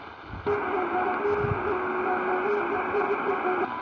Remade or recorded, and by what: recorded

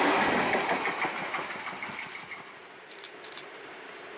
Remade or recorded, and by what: recorded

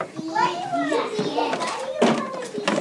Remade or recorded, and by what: recorded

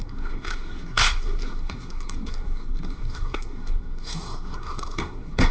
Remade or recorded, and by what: remade, codec, SNAC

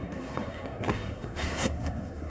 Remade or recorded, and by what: remade, codec, SNAC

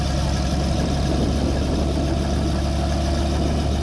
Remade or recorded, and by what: recorded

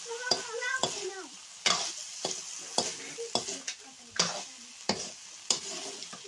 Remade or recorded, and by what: recorded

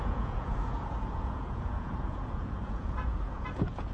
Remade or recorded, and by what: remade, vocoder, Vocos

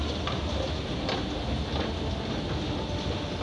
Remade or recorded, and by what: recorded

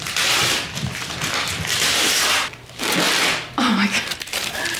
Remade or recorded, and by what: recorded